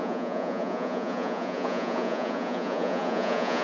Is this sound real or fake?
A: fake